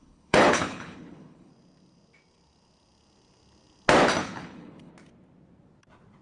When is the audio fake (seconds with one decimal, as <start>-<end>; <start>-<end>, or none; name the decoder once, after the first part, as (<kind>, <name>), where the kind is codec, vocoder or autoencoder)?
0.0-1.5 (codec, HILCodec); 4.2-4.9